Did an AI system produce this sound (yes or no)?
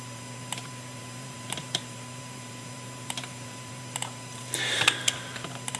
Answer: yes